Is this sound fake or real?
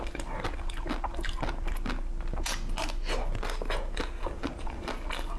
real